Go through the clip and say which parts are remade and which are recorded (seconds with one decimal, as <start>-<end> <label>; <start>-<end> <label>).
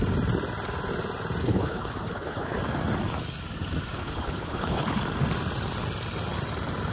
0.0-1.4 recorded; 1.4-2.6 remade; 2.6-4.0 recorded; 4.0-5.0 remade; 5.0-6.9 recorded